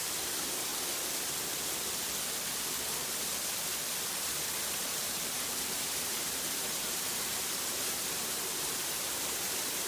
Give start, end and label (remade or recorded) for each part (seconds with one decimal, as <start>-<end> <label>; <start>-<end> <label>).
0.0-0.7 remade; 0.7-4.8 recorded; 4.8-9.9 remade